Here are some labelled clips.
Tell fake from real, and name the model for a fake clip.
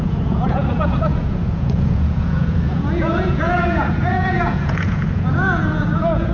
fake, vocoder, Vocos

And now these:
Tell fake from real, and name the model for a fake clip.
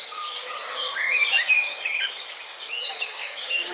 fake, codec, DAC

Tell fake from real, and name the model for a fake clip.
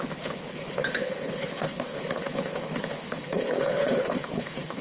fake, codec, HILCodec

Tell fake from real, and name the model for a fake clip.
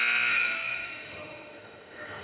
fake, autoencoder, DAC-VAE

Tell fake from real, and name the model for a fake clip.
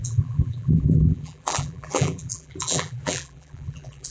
fake, vocoder, BigVGAN v2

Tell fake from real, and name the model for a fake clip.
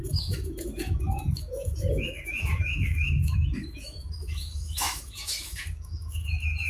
fake, autoencoder, DAC-VAE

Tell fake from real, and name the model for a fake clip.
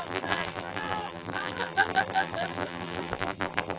fake, vocoder, BigVGAN v2